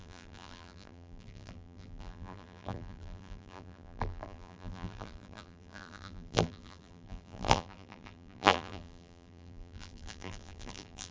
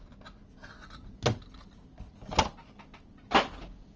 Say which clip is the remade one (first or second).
first